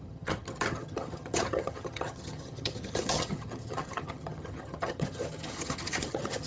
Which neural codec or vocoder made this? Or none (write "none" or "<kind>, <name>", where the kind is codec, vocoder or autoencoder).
vocoder, HiFi-GAN